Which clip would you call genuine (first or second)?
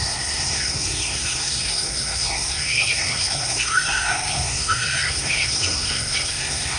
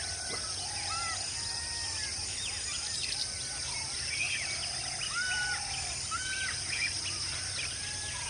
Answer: second